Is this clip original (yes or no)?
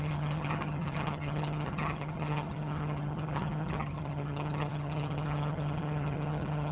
no